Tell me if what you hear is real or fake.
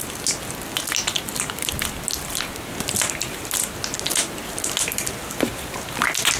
real